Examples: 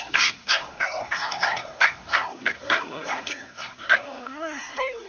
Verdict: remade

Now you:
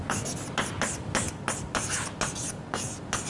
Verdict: recorded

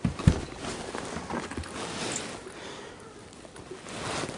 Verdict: recorded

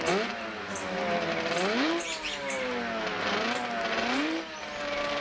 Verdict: recorded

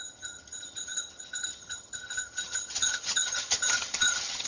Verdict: remade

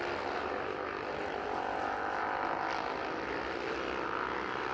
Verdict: recorded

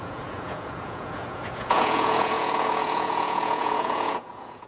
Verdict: remade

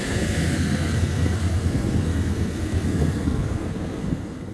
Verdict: remade